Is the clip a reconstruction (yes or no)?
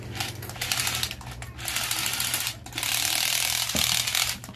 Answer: no